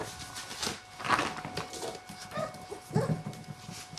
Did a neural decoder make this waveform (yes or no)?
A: no